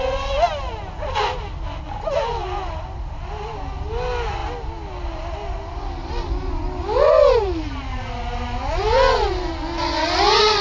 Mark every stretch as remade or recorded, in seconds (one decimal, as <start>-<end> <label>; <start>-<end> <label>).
0.0-10.6 recorded